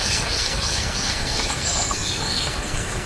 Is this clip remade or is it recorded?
remade